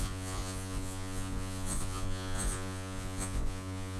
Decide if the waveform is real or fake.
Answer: fake